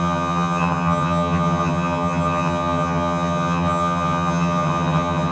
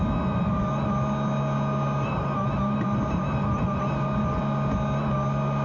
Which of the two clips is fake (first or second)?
first